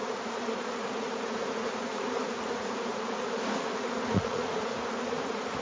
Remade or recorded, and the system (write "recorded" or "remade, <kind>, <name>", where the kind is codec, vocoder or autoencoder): remade, vocoder, Vocos